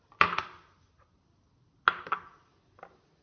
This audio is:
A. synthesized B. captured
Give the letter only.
B